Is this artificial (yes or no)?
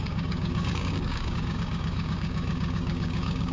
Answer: yes